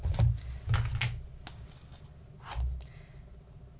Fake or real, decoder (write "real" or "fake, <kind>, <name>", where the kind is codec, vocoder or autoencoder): real